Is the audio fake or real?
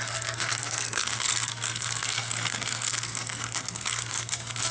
fake